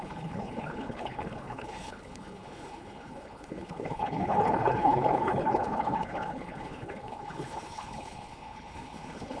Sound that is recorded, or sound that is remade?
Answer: remade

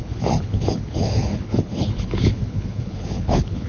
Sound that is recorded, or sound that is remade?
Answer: remade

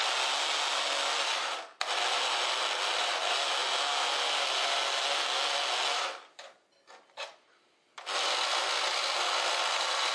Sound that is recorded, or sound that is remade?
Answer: recorded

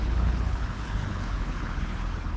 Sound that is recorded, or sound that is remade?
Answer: remade